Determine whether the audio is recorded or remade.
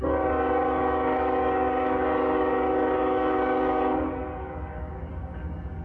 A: remade